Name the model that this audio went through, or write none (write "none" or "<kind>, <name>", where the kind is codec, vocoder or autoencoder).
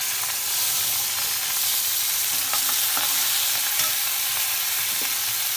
none